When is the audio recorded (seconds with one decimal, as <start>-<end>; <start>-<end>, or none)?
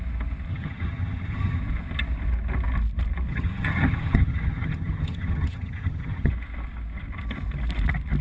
0.0-0.5; 1.6-3.3; 6.3-8.2